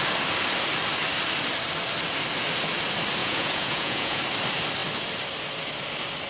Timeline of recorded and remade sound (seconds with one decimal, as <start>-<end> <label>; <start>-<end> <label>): 0.0-3.2 recorded; 3.2-4.2 remade; 4.2-6.3 recorded